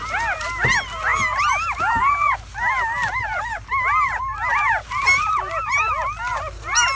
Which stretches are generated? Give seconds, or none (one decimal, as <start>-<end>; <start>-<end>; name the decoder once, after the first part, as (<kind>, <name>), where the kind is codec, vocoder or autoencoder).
3.2-3.7 (vocoder, BigVGAN v2); 4.5-5.9